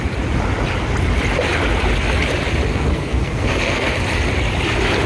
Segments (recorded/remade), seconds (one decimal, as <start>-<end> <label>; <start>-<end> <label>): 0.0-2.7 recorded; 2.7-3.9 remade; 3.9-5.1 recorded